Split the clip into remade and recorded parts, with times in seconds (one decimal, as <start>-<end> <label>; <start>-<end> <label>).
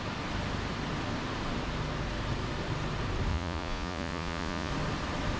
0.0-3.3 recorded; 3.3-4.7 remade; 4.7-5.4 recorded